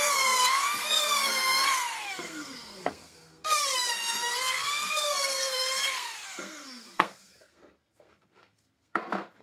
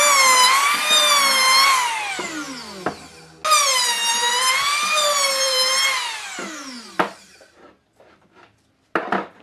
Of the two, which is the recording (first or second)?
second